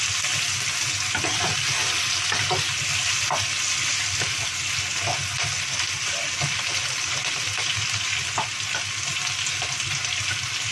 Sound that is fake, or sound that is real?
real